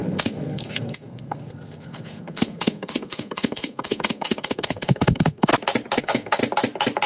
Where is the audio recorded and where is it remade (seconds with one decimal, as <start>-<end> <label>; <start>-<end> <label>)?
0.0-5.5 remade; 5.5-6.0 recorded; 6.0-6.4 remade; 6.4-7.1 recorded